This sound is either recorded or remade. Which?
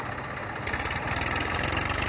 recorded